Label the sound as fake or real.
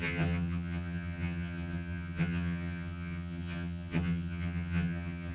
fake